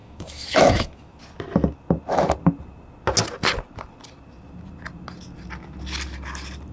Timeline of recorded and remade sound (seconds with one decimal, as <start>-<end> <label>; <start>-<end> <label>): 0.0-1.2 remade; 1.2-6.7 recorded